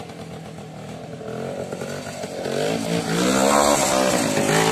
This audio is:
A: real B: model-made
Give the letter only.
A